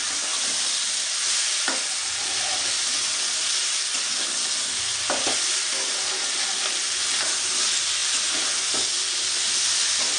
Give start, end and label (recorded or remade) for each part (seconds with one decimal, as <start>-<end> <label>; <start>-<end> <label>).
0.0-10.2 recorded